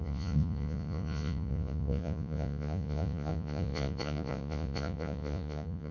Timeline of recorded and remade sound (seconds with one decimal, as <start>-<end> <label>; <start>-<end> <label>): 0.0-5.9 remade